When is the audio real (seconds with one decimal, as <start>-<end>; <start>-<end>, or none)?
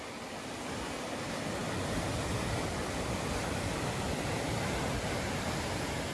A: 0.0-6.1